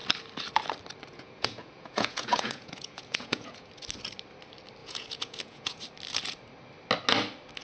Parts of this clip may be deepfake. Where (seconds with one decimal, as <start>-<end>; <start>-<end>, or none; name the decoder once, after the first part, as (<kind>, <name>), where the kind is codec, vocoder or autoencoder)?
1.1-3.7 (vocoder, Vocos); 4.8-5.8